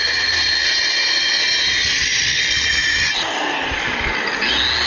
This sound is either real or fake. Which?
real